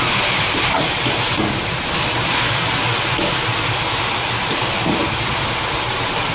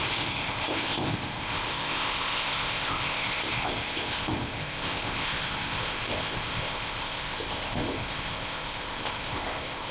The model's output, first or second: second